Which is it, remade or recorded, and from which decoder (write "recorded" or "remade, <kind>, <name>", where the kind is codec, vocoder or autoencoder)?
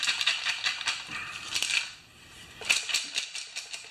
recorded